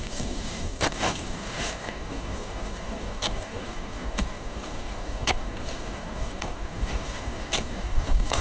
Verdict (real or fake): fake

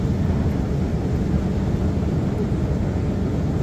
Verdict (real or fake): real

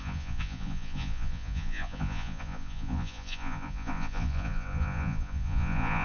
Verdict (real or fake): fake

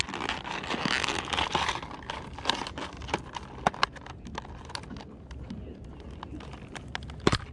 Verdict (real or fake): real